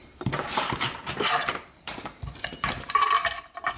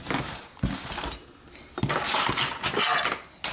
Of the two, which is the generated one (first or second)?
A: first